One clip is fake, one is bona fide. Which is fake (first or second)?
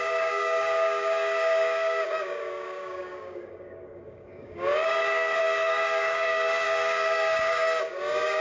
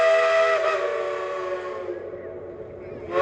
first